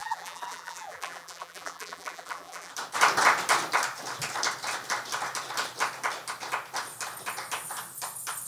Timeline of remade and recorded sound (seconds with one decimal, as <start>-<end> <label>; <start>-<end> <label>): 0.0-2.7 remade; 2.7-8.5 recorded